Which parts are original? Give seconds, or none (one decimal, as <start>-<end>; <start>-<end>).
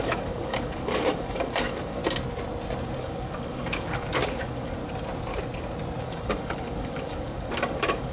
2.0-3.0; 4.8-6.0